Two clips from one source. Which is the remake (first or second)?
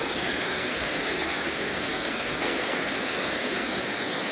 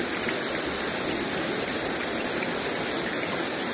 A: first